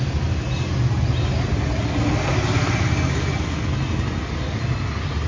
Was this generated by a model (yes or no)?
no